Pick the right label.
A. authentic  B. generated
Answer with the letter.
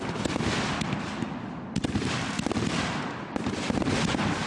A